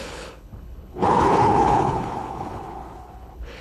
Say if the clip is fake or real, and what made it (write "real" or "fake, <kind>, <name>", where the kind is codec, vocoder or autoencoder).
fake, codec, HILCodec